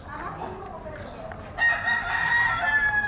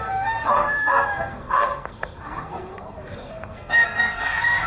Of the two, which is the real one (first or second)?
first